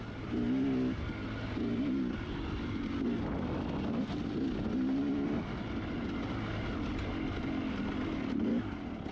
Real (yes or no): yes